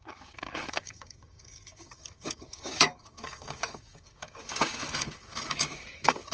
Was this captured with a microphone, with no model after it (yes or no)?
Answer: no